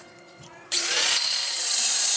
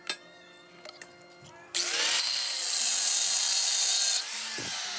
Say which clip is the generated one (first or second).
first